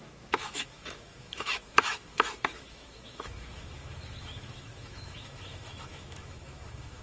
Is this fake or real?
fake